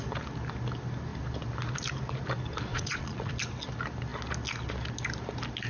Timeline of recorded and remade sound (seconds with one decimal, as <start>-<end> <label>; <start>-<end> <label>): 0.0-2.7 recorded; 2.7-3.3 remade; 3.3-5.7 recorded